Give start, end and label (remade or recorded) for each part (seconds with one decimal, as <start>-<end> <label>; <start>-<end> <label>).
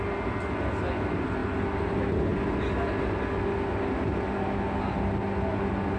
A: 0.0-6.0 recorded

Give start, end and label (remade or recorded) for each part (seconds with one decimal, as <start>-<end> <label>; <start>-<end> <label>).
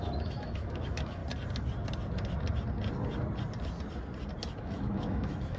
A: 0.0-1.2 remade; 1.2-4.6 recorded; 4.6-5.6 remade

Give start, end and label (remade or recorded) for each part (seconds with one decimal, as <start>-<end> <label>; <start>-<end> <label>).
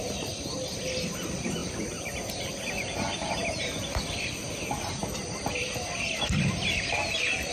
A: 0.0-1.6 remade; 1.6-3.6 recorded; 3.6-7.5 remade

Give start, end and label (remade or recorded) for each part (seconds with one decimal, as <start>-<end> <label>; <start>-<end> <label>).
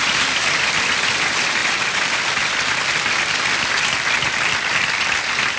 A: 0.0-5.6 recorded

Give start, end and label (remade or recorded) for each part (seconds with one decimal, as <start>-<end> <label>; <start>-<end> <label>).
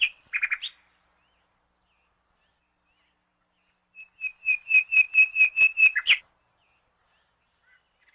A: 0.0-8.1 recorded